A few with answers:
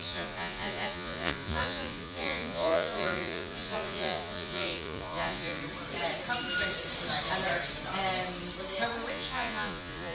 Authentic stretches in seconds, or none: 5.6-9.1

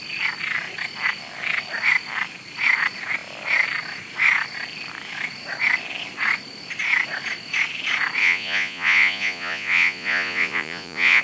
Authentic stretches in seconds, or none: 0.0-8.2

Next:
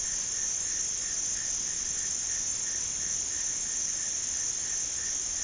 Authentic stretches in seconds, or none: 0.0-5.4

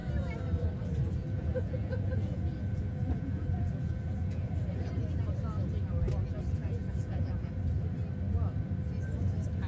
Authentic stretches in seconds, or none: 0.0-1.2; 4.5-6.6; 7.5-9.7

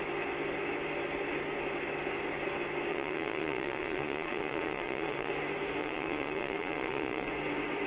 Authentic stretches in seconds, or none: 0.0-2.9; 5.3-5.8; 7.3-7.9

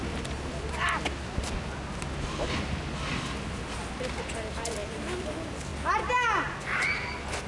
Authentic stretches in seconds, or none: 0.0-7.5

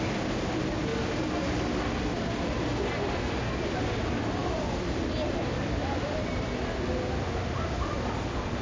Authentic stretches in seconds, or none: 0.0-8.6